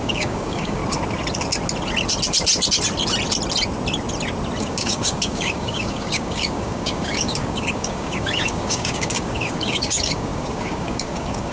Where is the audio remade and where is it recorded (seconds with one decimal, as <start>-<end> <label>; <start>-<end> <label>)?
0.0-0.8 remade; 0.8-4.6 recorded; 4.6-11.5 remade